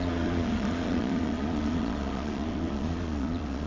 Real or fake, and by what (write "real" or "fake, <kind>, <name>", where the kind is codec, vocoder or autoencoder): fake, vocoder, Vocos